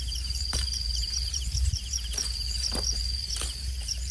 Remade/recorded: remade